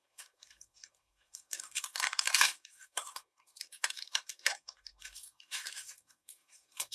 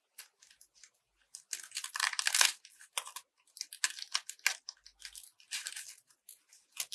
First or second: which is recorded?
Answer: second